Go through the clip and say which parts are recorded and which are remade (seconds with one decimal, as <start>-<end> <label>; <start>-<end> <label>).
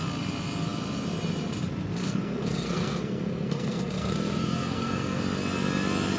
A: 0.0-2.0 recorded; 2.0-5.2 remade; 5.2-6.2 recorded